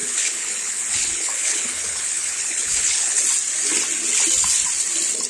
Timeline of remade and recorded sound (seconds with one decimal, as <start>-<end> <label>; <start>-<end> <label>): 0.0-3.2 remade; 3.2-5.3 recorded